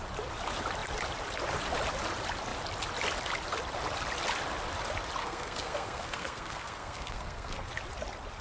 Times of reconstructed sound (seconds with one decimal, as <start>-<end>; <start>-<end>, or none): 5.2-7.7